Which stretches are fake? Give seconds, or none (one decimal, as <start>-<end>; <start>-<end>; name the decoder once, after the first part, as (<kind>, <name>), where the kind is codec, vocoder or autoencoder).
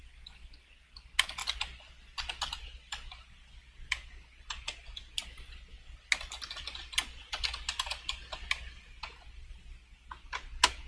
none